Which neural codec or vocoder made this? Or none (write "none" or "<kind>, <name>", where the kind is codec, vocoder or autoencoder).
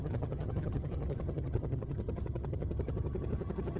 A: vocoder, HiFi-GAN